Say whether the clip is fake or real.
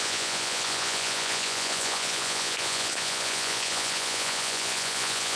fake